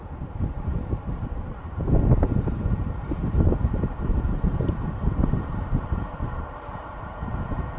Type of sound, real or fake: fake